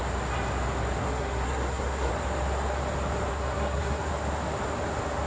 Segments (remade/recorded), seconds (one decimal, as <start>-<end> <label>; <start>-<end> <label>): 0.0-1.0 recorded; 1.0-2.1 remade; 2.1-3.3 recorded; 3.3-4.1 remade; 4.1-5.3 recorded